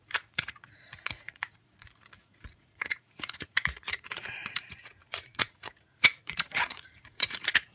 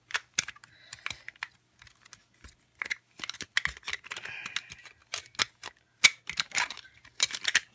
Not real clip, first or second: first